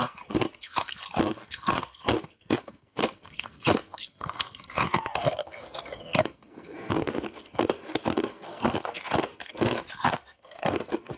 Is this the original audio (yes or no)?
no